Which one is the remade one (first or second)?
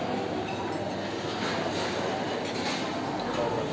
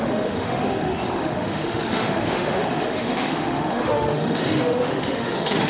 second